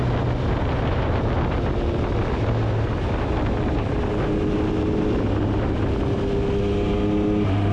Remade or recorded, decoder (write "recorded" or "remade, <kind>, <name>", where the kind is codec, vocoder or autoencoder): recorded